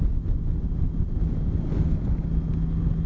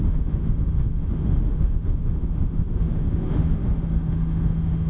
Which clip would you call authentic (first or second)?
first